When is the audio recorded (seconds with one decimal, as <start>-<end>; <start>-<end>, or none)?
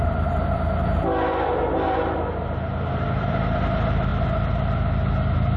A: 0.0-5.6